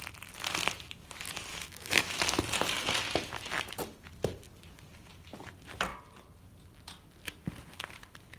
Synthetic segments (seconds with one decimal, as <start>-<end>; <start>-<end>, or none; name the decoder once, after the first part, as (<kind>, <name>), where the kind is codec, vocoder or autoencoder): 1.5-2.2 (autoencoder, DAC-VAE)